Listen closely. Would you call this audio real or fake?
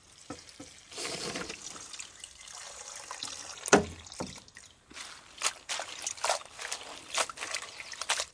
real